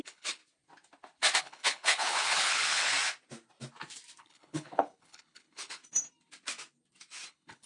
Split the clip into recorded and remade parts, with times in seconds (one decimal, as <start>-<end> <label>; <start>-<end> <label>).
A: 0.0-0.4 remade; 0.4-1.4 recorded; 1.4-2.9 remade; 2.9-4.2 recorded; 4.2-5.8 remade; 5.8-7.3 recorded; 7.3-7.7 remade